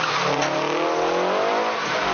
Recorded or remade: recorded